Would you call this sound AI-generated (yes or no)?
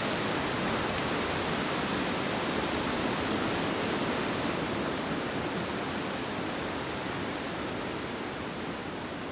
no